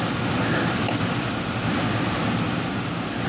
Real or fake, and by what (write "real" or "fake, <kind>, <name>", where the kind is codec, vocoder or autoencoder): real